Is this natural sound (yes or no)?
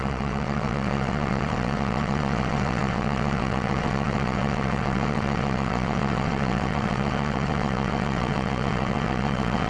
no